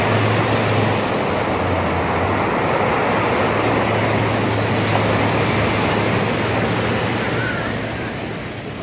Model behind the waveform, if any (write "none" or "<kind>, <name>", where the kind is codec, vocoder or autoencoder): none